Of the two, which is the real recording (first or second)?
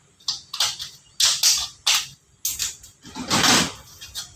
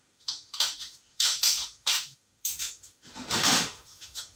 first